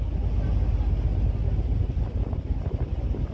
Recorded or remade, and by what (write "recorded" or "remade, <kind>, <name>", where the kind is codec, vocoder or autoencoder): recorded